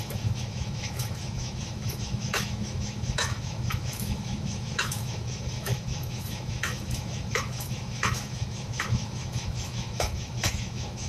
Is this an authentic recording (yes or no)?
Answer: no